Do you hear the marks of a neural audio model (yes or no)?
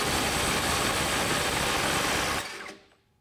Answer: no